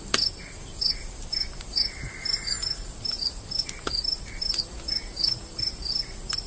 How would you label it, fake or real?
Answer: real